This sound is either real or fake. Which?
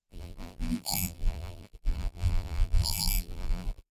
fake